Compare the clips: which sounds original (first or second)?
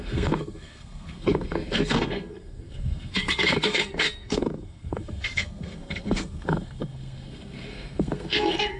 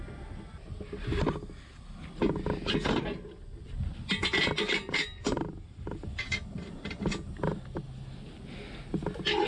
second